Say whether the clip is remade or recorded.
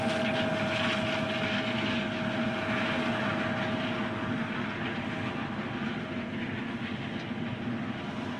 recorded